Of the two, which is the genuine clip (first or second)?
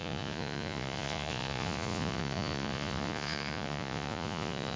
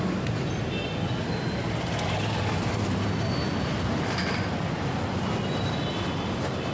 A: second